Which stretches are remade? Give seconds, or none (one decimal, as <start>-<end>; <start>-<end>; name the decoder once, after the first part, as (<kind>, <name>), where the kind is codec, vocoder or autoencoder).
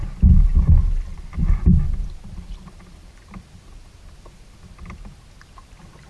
none